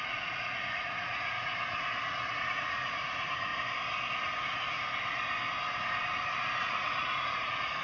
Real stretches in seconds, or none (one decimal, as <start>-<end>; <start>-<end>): 1.5-2.5; 3.5-6.6